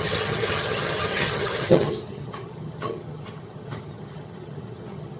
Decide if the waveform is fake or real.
fake